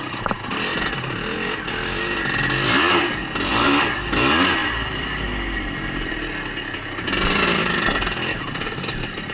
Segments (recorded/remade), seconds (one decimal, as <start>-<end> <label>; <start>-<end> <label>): 0.0-3.5 recorded; 3.5-4.1 remade; 4.1-4.6 recorded; 4.6-5.2 remade; 5.2-9.3 recorded